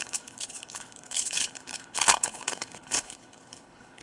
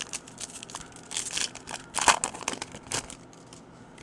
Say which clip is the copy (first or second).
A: first